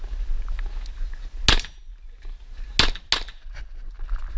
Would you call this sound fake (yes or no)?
no